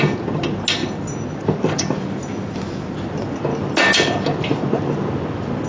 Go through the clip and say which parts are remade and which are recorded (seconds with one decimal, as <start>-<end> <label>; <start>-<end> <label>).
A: 0.0-5.7 recorded

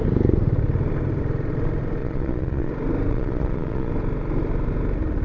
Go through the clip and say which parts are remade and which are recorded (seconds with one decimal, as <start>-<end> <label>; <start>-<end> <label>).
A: 0.0-2.0 recorded; 2.0-2.7 remade; 2.7-3.1 recorded; 3.1-3.9 remade; 3.9-5.2 recorded

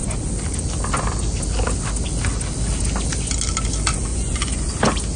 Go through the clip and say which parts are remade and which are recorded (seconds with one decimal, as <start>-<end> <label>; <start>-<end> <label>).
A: 0.0-4.1 recorded; 4.1-4.7 remade; 4.7-5.2 recorded

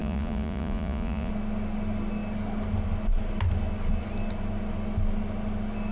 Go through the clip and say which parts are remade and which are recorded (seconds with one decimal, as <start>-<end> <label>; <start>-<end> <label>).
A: 0.0-1.3 remade; 1.3-5.9 recorded

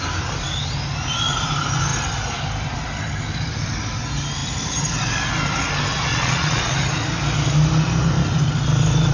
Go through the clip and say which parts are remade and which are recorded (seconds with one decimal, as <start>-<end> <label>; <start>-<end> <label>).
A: 0.0-6.1 recorded; 6.1-6.7 remade; 6.7-9.1 recorded

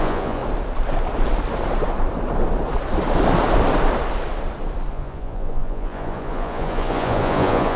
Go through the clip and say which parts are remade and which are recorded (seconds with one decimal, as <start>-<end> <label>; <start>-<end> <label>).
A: 0.0-0.4 remade; 0.4-4.9 recorded; 4.9-7.8 remade

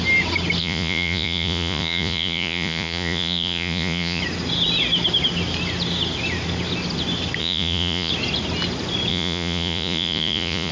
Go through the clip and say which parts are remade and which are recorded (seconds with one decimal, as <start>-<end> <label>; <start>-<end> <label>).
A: 0.0-0.6 recorded; 0.6-4.2 remade; 4.2-7.4 recorded; 7.4-8.1 remade; 8.1-9.1 recorded; 9.1-10.7 remade